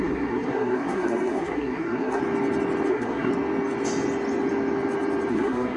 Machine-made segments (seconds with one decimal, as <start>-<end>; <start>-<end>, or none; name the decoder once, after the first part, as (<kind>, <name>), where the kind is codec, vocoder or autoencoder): 0.0-2.2 (codec, SNAC); 2.9-3.3; 5.3-5.8